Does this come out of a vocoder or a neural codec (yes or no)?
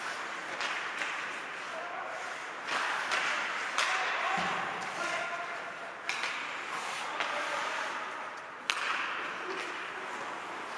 no